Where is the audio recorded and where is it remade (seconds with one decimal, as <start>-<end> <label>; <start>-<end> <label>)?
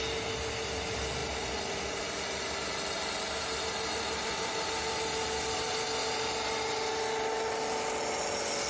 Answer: 0.0-8.7 recorded